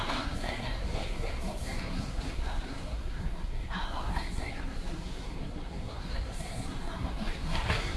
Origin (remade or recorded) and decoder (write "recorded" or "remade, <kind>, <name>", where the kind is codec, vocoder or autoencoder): remade, codec, SNAC